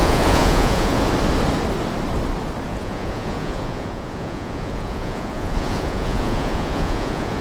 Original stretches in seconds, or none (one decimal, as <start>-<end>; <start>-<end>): 1.1-2.7